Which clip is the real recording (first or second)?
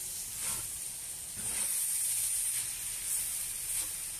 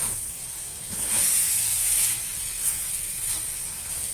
first